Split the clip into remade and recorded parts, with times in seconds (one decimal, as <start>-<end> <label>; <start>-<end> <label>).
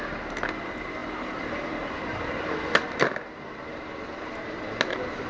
0.0-5.3 recorded